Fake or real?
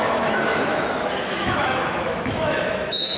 fake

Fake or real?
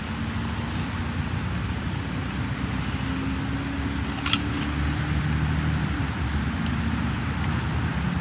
real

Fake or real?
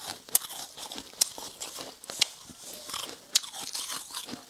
real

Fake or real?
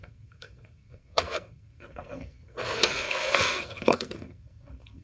fake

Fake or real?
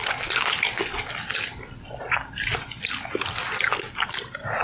real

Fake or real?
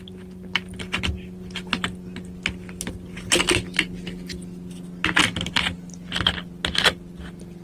real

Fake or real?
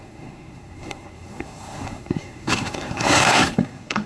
fake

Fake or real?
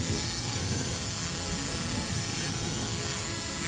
fake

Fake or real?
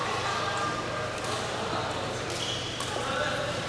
real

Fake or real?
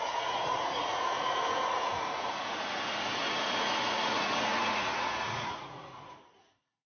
fake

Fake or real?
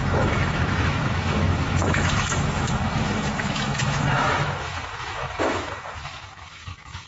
fake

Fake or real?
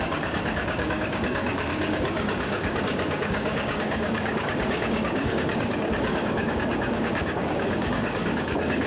fake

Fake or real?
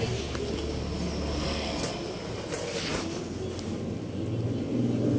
real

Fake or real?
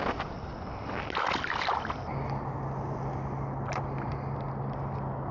real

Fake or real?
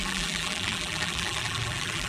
fake